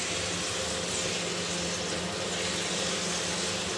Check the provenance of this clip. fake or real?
real